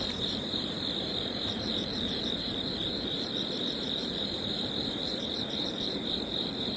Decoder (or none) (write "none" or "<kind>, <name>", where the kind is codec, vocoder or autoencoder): vocoder, BigVGAN v2